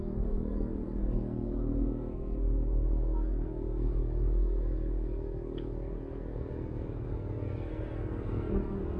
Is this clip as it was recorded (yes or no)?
no